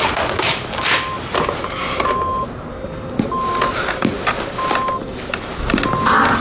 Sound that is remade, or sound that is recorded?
recorded